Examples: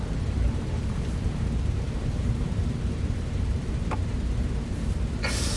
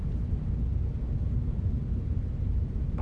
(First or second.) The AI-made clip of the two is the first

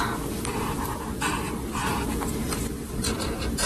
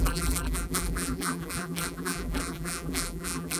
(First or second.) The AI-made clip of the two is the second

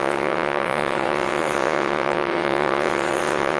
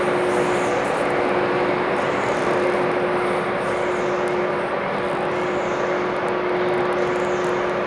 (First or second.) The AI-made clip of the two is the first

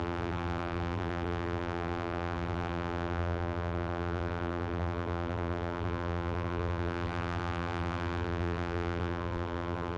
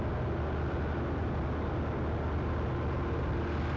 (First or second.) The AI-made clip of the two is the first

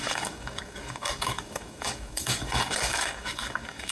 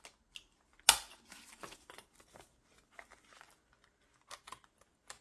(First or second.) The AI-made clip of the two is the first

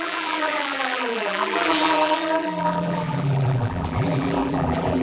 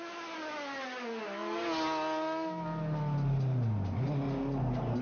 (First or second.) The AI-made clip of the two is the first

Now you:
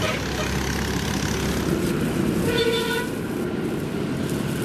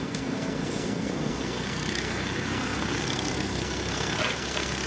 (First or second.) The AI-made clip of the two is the second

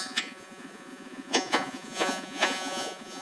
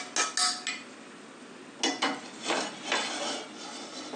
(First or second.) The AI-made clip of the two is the first